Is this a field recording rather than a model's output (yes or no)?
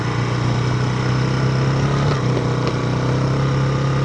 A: yes